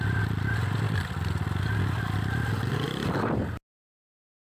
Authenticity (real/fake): real